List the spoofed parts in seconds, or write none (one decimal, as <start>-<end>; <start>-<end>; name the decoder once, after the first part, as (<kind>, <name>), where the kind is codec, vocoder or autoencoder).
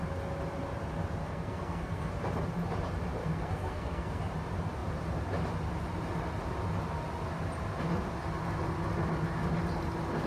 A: 1.2-2.1 (codec, SNAC); 3.2-4.2